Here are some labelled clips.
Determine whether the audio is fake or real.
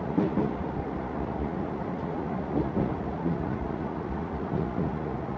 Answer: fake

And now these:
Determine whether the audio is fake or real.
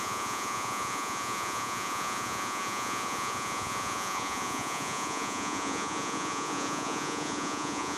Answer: fake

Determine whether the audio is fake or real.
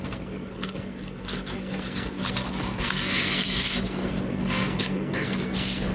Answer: fake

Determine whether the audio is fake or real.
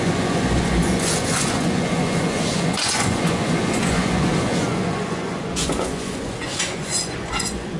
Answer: fake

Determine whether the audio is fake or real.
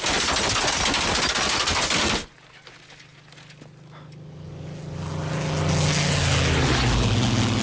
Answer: real